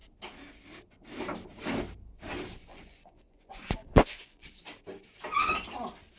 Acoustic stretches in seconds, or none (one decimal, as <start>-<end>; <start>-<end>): 0.0-2.6; 4.6-6.2

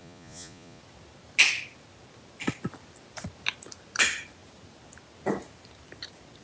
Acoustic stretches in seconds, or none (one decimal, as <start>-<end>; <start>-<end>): 0.8-6.4

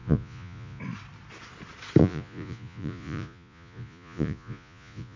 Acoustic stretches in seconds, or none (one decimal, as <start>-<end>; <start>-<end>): 0.8-2.0

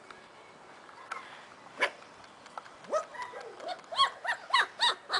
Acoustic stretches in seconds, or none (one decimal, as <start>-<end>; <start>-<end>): 0.0-5.2

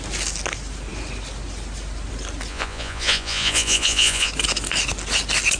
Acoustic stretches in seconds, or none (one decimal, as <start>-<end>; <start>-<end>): 0.0-2.5; 4.3-5.6

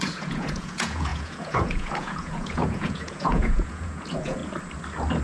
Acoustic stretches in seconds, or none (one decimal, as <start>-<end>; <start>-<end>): 4.4-5.2

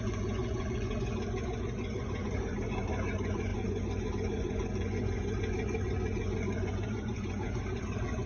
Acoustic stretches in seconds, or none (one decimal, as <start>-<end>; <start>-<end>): none

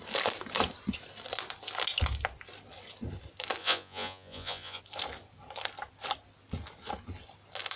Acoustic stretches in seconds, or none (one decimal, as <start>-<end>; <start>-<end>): 0.0-3.6; 4.8-7.8